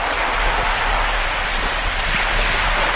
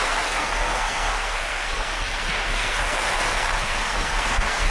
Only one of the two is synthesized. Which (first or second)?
second